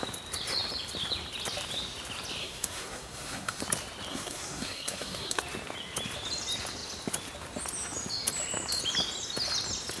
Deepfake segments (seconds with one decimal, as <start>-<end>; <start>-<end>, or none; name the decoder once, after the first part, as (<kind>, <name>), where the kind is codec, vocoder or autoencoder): 2.4-3.6 (codec, SNAC); 4.1-5.4